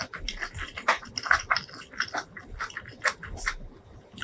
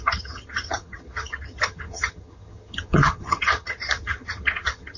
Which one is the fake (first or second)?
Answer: second